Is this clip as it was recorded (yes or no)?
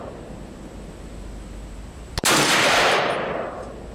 yes